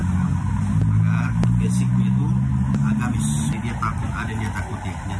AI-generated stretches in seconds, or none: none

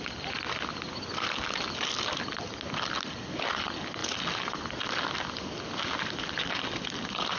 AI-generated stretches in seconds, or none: none

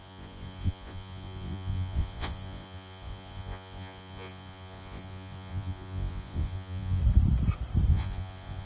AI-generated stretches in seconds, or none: 0.0-7.0 (vocoder, Vocos); 7.9-8.7

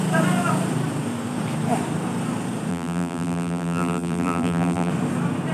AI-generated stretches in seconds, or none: 2.7-4.9 (vocoder, BigVGAN v2)

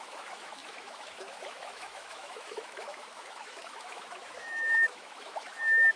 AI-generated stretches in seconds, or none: 0.0-6.0 (autoencoder, DAC-VAE)